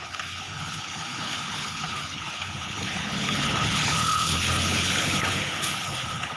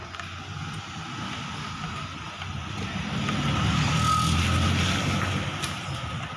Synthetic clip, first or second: first